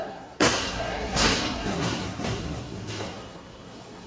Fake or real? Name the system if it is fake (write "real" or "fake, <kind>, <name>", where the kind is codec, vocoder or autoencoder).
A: fake, codec, SNAC